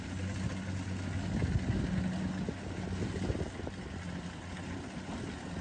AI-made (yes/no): no